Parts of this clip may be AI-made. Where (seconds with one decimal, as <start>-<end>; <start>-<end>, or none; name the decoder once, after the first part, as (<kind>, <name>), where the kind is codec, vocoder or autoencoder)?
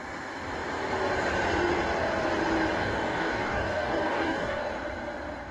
2.8-4.7 (codec, DAC)